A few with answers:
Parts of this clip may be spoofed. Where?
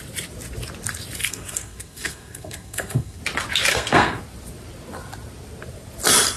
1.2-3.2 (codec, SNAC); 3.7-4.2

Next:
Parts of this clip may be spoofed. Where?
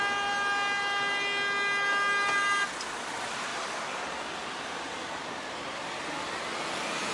none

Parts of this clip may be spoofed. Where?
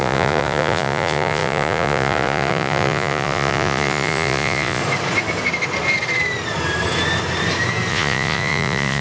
0.0-4.8 (vocoder, Vocos); 7.9-9.0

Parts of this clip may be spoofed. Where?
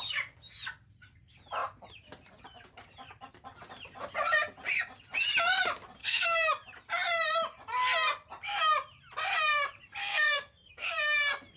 6.0-6.5 (codec, SNAC); 10.0-10.9